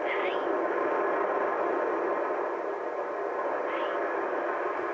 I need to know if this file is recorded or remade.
recorded